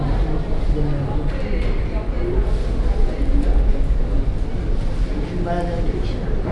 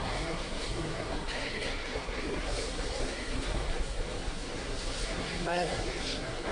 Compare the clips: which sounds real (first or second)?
first